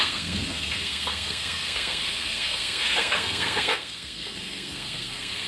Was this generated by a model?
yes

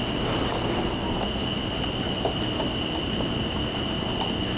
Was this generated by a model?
no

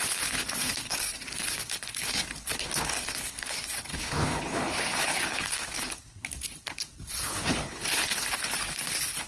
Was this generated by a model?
yes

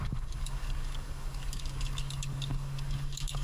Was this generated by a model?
yes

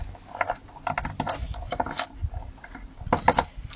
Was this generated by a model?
no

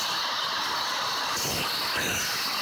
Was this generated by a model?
no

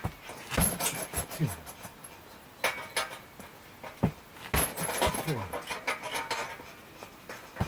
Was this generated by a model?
no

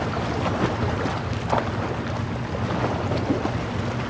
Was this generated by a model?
no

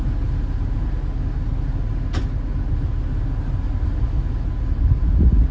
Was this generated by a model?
no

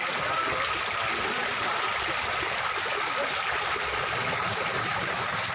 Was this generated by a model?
no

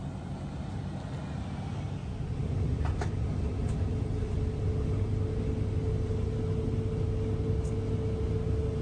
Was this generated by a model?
no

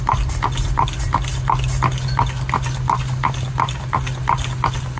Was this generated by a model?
no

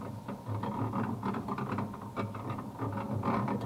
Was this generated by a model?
yes